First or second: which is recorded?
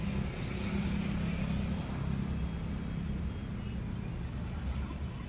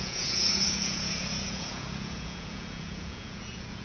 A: first